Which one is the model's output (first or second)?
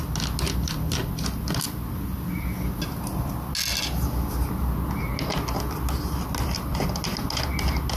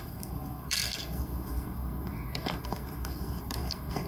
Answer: second